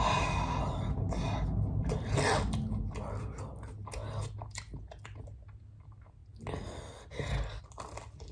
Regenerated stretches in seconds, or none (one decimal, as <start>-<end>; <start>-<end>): none